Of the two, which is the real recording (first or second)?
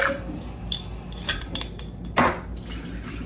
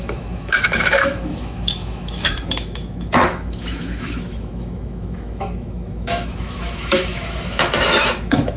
first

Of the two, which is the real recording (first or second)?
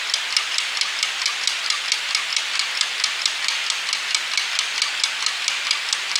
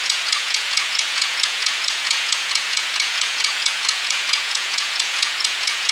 first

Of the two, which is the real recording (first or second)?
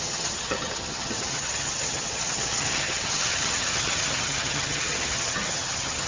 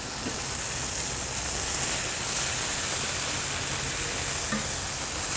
second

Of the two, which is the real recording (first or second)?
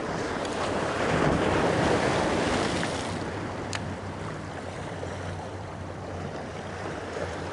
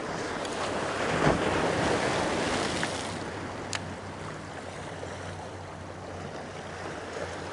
second